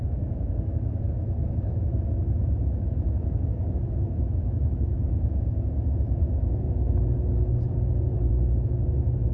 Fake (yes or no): yes